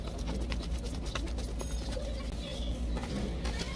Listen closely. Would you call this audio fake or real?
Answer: real